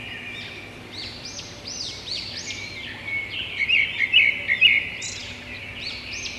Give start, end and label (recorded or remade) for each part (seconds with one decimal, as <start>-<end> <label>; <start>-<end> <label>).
0.0-5.2 recorded; 5.2-5.9 remade; 5.9-6.4 recorded